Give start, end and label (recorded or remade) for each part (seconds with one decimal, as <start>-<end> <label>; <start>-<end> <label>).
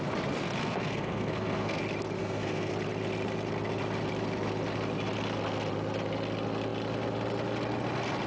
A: 0.0-0.6 recorded; 0.6-1.8 remade; 1.8-2.2 recorded; 2.2-2.7 remade; 2.7-8.3 recorded